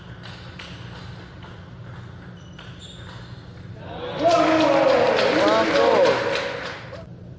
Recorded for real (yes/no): yes